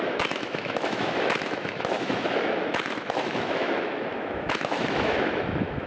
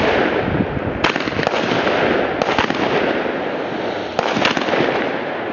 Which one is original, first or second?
second